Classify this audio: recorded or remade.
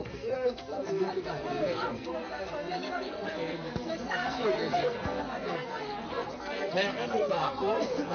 remade